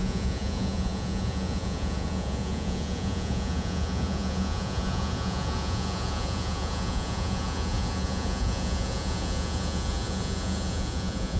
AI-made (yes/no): yes